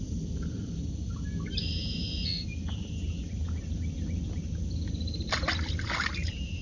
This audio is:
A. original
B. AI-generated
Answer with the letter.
A